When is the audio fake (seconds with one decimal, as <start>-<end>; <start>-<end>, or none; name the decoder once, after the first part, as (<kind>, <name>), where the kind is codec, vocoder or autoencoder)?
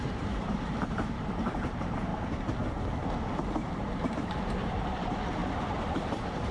0.0-2.1 (vocoder, BigVGAN v2); 4.1-5.4